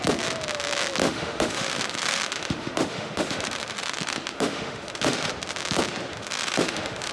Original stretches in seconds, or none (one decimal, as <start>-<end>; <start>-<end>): 0.0-1.0; 5.3-6.1